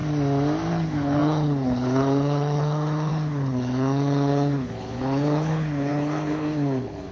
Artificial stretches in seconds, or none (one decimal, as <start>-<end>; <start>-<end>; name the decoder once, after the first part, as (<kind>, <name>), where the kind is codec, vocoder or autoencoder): 0.7-7.1 (codec, HILCodec)